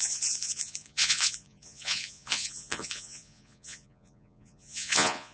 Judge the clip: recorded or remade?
remade